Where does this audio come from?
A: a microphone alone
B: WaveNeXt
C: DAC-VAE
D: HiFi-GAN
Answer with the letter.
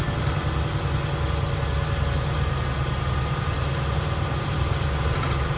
A